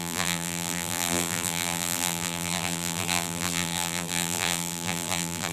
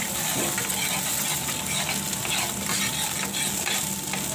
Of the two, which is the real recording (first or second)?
second